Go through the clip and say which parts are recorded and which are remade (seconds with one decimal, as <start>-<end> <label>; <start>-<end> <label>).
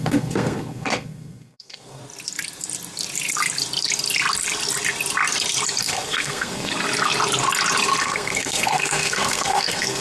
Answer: 0.0-2.0 remade; 2.0-5.8 recorded; 5.8-6.7 remade; 6.7-8.0 recorded; 8.0-10.0 remade